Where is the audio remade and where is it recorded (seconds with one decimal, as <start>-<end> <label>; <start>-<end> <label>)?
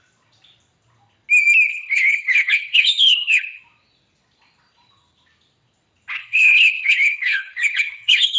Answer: 0.0-1.7 recorded; 1.7-3.6 remade; 3.6-6.2 recorded; 6.2-8.4 remade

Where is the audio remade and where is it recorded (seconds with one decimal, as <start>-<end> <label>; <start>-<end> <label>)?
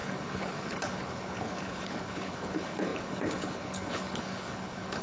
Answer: 0.0-5.0 remade